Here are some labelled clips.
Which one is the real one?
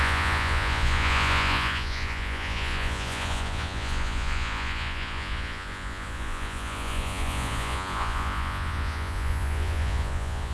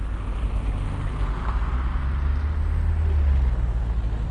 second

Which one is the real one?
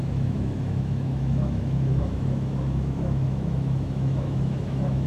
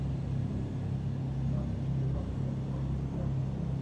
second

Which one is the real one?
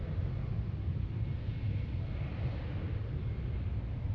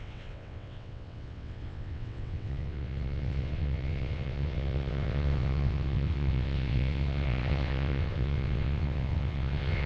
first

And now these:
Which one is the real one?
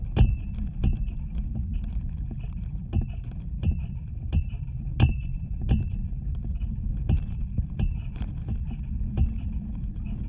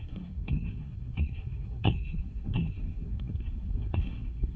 first